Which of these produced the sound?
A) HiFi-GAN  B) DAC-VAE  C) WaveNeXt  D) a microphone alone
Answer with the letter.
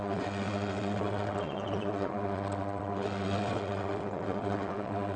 C